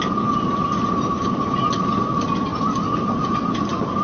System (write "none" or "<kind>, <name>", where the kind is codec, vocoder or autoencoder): none